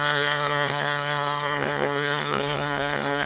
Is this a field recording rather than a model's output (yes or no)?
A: no